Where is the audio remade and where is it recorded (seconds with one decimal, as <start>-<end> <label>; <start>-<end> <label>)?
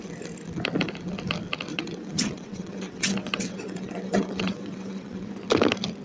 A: 0.0-1.7 recorded; 1.7-5.3 remade; 5.3-6.0 recorded